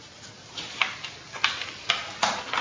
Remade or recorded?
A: recorded